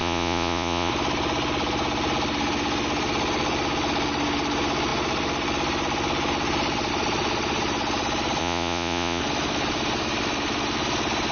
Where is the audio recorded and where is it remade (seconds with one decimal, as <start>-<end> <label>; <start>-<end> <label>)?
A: 0.0-0.9 remade; 0.9-8.4 recorded; 8.4-9.2 remade; 9.2-11.3 recorded